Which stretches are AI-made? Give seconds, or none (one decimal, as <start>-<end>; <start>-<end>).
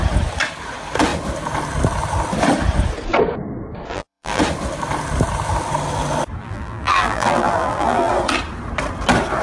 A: 3.9-4.4; 6.4-8.1